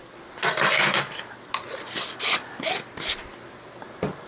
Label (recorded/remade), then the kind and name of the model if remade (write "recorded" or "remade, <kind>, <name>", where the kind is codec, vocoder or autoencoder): recorded